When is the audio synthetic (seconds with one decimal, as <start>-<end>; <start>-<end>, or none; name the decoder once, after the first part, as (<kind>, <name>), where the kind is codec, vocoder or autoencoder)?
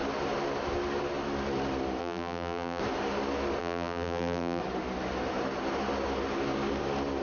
2.0-2.8 (vocoder, BigVGAN v2); 3.6-4.6